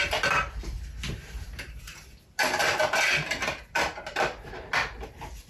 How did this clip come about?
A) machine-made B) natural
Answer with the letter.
B